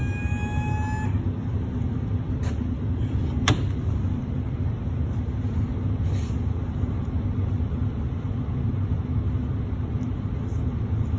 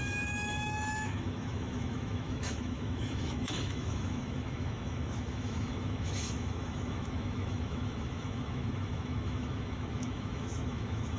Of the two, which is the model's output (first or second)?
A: second